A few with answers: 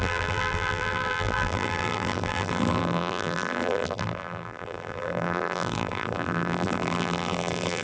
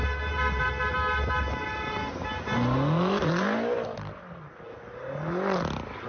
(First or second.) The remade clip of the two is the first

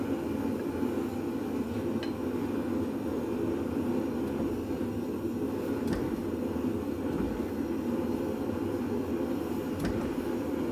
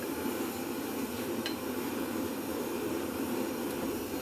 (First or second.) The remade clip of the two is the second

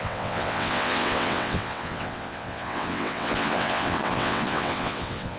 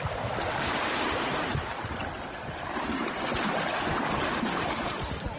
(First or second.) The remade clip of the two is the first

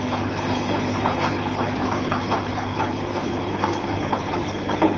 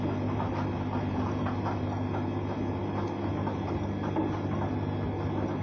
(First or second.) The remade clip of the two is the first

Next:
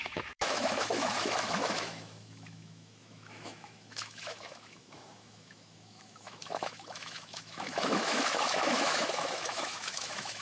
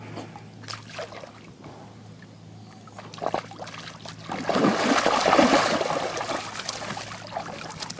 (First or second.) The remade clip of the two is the first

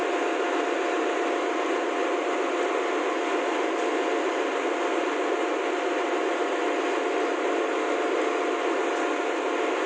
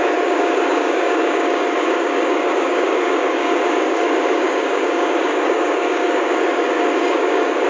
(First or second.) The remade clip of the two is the second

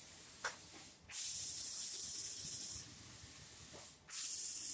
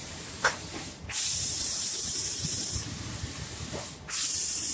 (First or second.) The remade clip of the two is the second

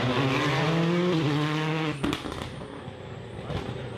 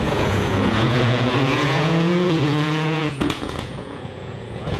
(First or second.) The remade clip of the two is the second